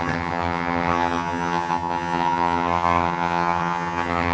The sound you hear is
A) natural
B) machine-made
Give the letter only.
B